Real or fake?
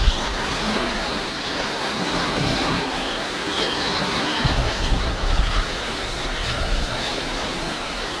fake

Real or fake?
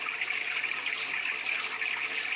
real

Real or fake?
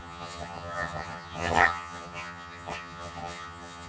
fake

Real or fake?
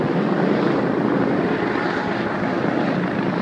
real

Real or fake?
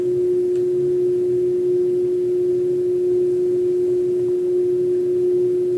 real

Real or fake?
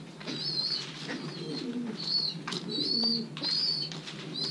real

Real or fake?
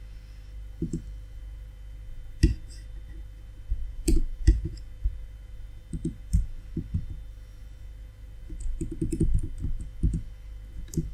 real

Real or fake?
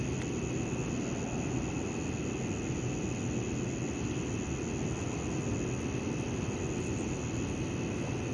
real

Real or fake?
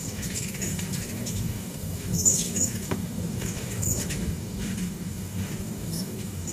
fake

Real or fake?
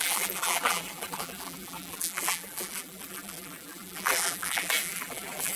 fake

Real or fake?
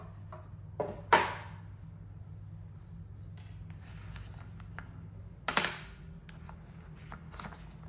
real